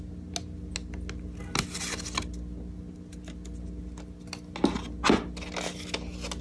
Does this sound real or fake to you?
real